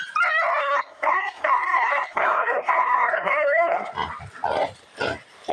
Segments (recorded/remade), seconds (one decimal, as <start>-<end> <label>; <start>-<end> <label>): 0.0-0.6 recorded; 0.6-3.9 remade; 3.9-5.5 recorded